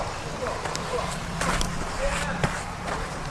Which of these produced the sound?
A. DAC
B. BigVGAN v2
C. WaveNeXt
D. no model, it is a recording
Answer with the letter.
B